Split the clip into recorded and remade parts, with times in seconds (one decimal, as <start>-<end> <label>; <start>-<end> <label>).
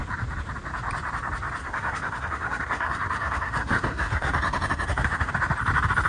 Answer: 0.0-1.6 recorded; 1.6-5.3 remade; 5.3-6.1 recorded